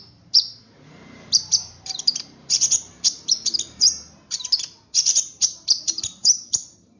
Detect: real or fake fake